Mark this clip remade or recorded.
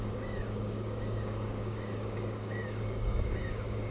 remade